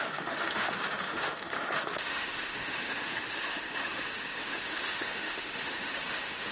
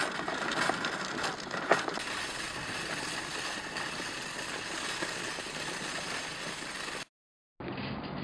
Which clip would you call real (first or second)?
second